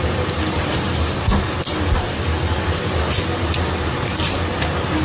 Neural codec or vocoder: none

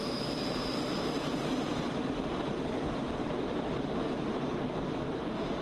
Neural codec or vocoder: vocoder, BigVGAN v2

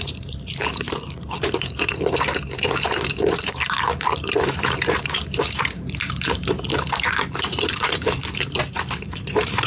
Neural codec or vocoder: vocoder, BigVGAN v2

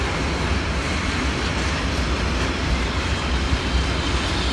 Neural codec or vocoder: none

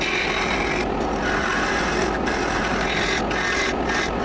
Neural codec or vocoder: none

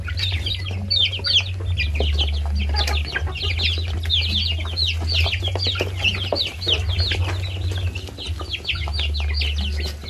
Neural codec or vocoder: none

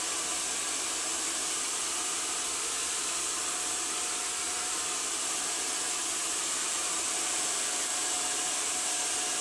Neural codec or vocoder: none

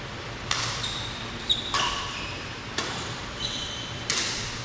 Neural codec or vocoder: vocoder, BigVGAN v2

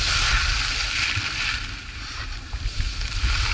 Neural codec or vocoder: none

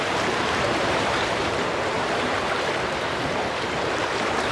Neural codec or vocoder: vocoder, BigVGAN v2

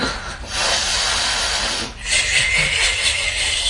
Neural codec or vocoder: vocoder, BigVGAN v2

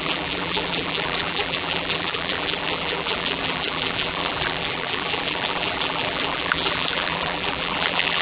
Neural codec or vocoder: vocoder, BigVGAN v2